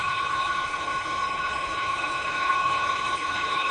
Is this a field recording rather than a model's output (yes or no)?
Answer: no